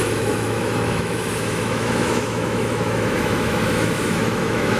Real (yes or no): no